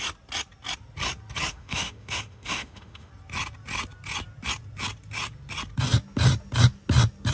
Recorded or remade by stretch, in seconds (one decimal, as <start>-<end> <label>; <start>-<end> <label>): 0.0-1.5 recorded; 1.5-3.1 remade; 3.1-7.3 recorded